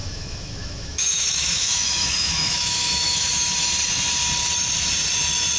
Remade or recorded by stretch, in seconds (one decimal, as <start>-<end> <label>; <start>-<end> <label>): 0.0-3.3 remade; 3.3-5.6 recorded